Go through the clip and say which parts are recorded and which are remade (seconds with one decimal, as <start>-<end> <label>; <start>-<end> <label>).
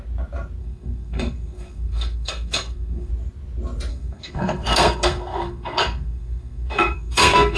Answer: 0.0-0.6 recorded; 0.6-3.1 remade; 3.1-3.9 recorded; 3.9-7.6 remade